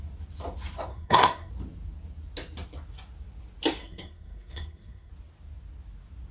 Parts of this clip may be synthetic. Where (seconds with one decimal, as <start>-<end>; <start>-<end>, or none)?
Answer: 0.9-1.5; 3.8-5.1